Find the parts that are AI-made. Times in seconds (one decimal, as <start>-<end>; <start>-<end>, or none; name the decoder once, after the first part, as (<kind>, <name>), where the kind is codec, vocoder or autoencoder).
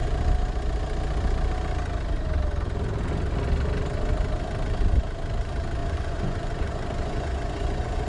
5.8-8.1 (vocoder, Vocos)